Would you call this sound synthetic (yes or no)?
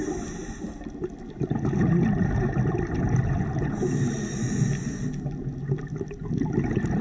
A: no